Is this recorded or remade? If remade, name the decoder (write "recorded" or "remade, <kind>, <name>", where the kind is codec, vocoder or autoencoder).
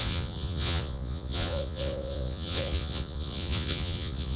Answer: remade, vocoder, Vocos